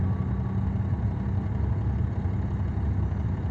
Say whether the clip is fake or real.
real